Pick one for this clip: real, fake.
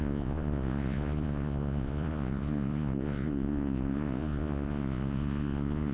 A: fake